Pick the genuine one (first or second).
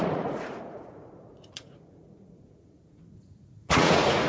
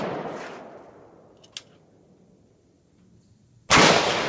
second